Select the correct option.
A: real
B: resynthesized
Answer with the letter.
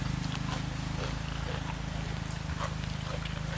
A